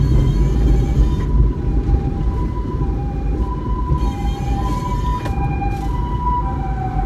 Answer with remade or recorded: recorded